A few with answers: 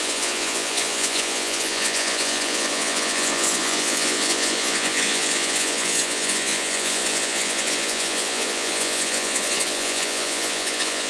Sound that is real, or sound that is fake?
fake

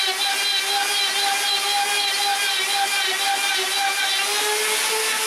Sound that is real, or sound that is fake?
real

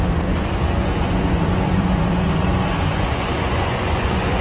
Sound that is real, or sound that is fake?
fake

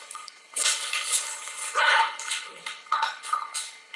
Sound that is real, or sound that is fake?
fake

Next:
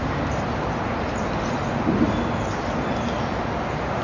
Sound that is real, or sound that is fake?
real